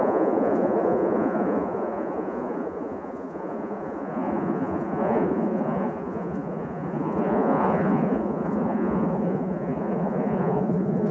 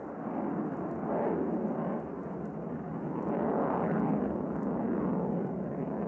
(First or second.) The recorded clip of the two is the second